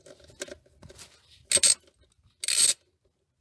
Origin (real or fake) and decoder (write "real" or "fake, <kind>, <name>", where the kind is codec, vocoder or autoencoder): real